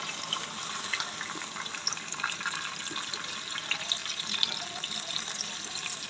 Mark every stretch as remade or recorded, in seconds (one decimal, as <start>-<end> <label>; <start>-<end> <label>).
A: 0.0-6.1 recorded